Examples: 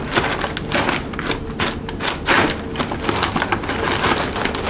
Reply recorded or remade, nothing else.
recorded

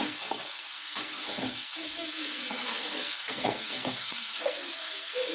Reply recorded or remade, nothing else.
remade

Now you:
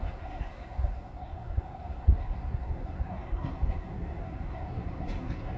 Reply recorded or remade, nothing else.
remade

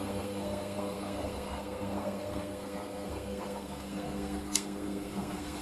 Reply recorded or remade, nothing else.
remade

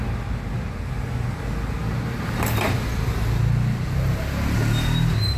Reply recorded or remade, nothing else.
recorded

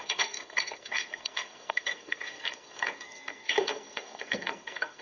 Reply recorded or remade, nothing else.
remade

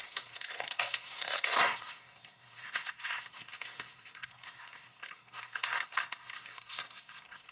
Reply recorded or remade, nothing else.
remade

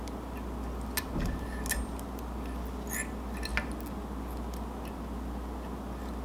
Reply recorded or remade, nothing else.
recorded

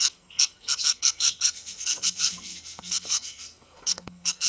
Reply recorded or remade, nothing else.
remade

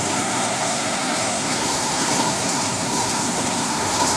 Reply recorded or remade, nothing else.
remade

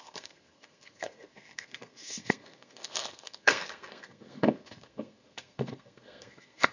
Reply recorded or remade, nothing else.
remade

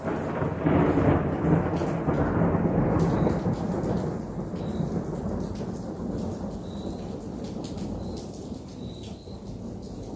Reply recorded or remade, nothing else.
recorded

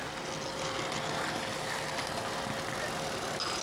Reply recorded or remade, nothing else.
recorded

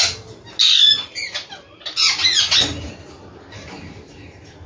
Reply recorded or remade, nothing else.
recorded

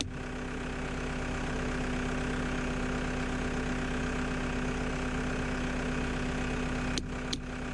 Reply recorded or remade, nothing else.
recorded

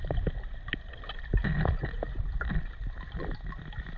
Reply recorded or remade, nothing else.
recorded